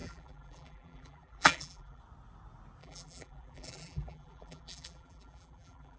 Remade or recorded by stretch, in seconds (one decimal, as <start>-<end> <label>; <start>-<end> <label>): 0.0-2.0 remade; 2.0-2.8 recorded; 2.8-6.0 remade